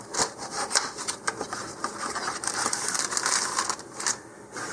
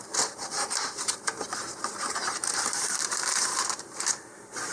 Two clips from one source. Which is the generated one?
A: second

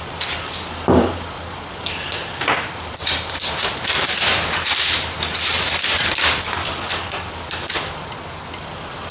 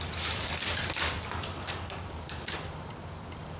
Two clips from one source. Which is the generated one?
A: second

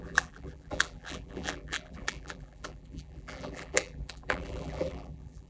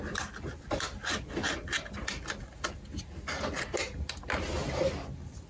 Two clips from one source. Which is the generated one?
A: first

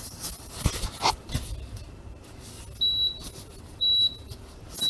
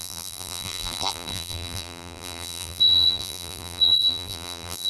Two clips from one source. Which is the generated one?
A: second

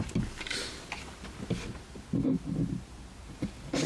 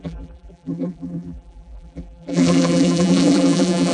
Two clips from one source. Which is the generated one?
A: second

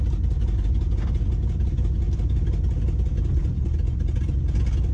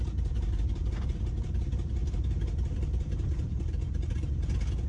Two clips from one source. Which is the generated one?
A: second